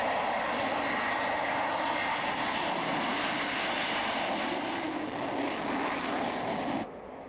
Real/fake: real